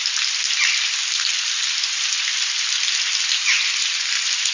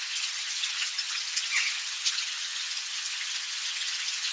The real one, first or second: first